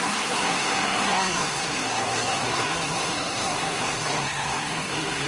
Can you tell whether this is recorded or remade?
remade